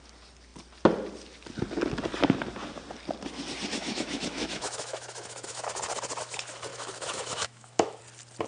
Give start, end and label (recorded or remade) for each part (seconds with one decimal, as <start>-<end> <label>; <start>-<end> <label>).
0.0-3.7 recorded; 3.7-5.7 remade; 5.7-6.7 recorded; 6.7-8.0 remade; 8.0-8.5 recorded